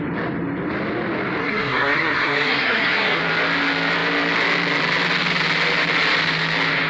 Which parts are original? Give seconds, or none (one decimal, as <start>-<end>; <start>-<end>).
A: 0.0-1.4; 3.2-6.9

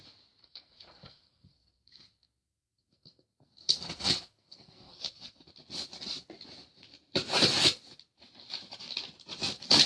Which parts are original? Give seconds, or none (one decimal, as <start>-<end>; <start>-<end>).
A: 0.0-0.4; 5.5-9.9

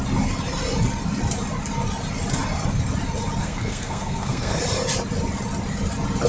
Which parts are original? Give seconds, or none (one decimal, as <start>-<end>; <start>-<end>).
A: 0.0-3.4; 4.6-6.3